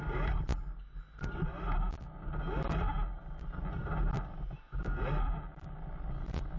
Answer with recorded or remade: recorded